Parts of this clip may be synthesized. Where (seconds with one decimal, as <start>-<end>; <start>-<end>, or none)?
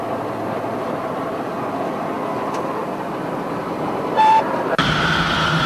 0.8-1.5; 2.8-5.2